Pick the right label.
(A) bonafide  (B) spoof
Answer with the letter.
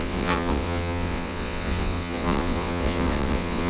B